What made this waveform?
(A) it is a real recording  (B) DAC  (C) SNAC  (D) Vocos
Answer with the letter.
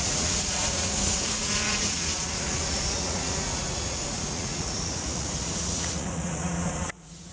D